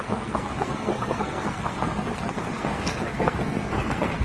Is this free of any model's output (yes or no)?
no